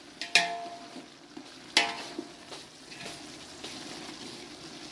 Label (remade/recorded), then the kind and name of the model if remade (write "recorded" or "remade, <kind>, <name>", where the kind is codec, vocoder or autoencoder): recorded